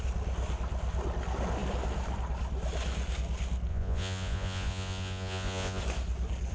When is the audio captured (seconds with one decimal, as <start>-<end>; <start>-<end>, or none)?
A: 0.0-3.7; 5.8-6.5